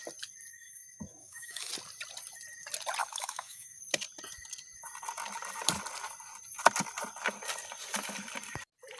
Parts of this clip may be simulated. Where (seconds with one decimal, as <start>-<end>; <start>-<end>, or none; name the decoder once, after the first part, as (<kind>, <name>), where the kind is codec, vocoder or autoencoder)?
0.5-1.7 (autoencoder, DAC-VAE); 3.0-3.8